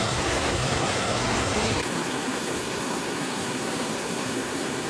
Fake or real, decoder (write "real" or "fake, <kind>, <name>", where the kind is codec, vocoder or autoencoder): fake, codec, SNAC